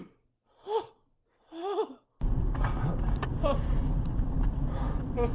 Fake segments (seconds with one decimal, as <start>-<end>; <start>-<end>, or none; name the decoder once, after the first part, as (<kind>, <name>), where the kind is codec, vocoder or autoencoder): none